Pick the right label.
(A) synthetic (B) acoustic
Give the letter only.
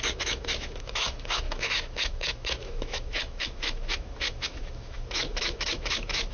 A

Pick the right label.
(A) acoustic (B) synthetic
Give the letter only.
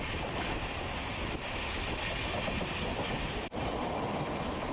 A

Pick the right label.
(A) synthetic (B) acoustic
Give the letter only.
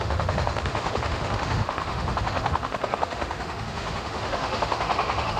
A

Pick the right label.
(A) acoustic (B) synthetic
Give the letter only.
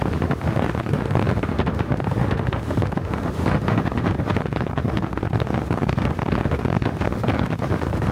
B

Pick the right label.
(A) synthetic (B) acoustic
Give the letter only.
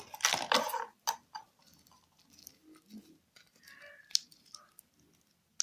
B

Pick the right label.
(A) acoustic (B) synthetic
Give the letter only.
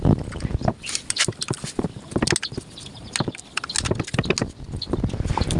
A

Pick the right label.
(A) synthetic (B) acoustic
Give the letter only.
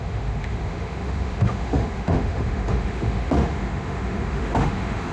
A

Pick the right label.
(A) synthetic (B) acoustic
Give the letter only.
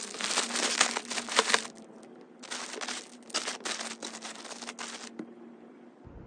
B